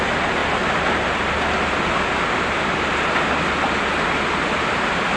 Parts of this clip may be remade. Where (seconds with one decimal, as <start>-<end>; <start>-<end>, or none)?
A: none